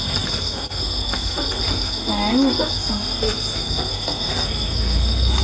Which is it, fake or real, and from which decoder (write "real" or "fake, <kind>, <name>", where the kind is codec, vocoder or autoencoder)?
fake, codec, SNAC